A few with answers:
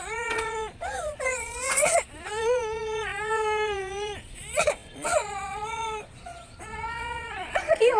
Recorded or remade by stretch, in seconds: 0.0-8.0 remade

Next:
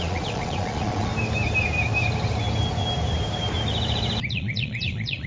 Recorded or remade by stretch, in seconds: 0.0-1.1 remade; 1.1-4.3 recorded; 4.3-5.3 remade

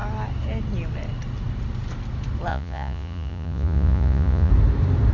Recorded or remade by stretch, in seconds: 0.0-2.5 recorded; 2.5-4.5 remade; 4.5-5.1 recorded

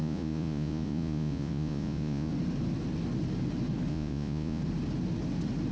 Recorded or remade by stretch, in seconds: 0.0-2.3 remade; 2.3-3.9 recorded; 3.9-4.6 remade; 4.6-5.7 recorded